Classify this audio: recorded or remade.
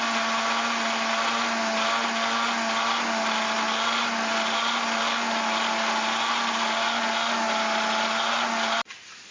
recorded